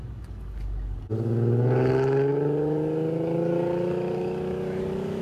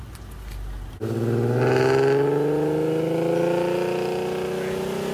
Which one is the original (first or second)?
second